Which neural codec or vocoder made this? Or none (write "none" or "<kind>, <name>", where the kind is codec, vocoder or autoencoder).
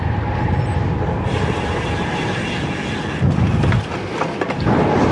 none